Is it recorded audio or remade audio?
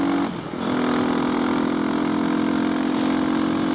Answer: recorded